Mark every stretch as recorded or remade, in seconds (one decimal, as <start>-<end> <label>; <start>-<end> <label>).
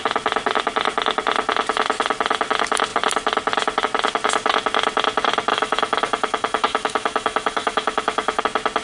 0.0-5.5 recorded; 5.5-8.4 remade; 8.4-8.8 recorded